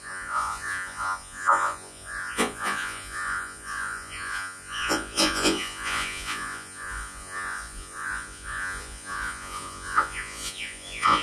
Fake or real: fake